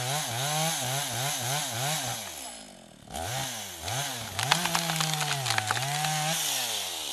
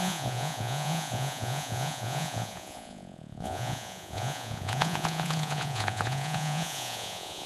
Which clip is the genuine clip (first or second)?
first